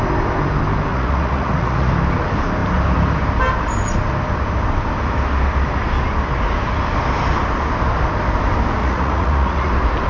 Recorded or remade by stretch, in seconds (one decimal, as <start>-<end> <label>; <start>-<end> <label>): 0.0-0.9 recorded; 0.9-1.9 remade; 1.9-8.8 recorded; 8.8-9.7 remade; 9.7-10.1 recorded